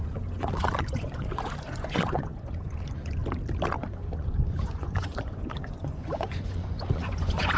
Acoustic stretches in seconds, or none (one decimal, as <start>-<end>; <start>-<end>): 3.2-3.9